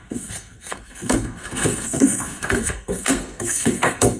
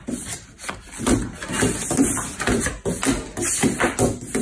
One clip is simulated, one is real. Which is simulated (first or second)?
first